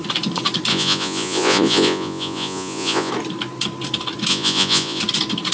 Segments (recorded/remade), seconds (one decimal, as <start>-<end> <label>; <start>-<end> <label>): 0.0-0.7 recorded; 0.7-3.1 remade; 3.1-4.3 recorded; 4.3-5.0 remade; 5.0-5.5 recorded